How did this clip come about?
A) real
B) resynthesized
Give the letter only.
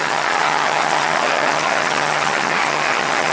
B